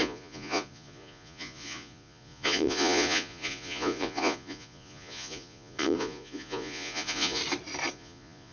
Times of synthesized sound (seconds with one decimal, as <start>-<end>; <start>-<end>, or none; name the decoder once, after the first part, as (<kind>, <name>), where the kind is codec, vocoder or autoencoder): 0.0-7.4 (vocoder, Vocos); 7.9-8.5